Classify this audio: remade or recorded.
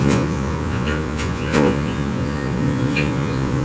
remade